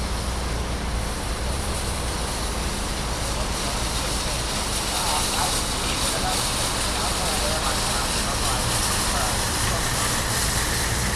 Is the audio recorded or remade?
recorded